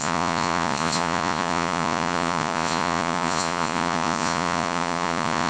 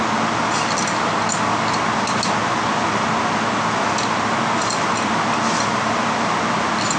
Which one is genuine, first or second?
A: second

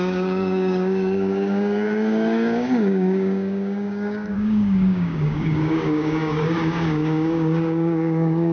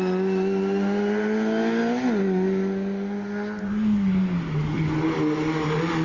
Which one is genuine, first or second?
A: second